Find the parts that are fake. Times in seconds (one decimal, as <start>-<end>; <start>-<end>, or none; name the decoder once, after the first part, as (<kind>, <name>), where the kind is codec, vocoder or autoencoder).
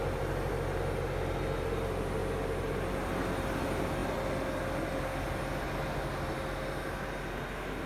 none